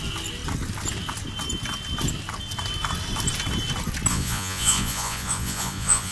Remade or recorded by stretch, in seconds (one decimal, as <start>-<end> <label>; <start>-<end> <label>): 0.0-4.1 recorded; 4.1-6.1 remade